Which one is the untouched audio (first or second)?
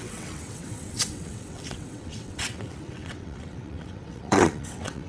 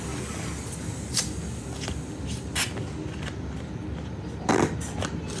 second